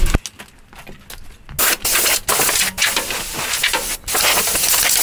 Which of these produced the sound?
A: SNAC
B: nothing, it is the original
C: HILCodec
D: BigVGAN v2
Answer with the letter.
B